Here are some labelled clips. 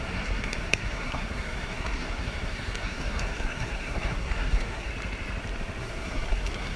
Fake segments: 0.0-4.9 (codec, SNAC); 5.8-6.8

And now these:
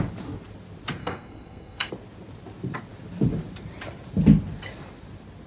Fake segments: 1.0-1.9 (codec, SNAC)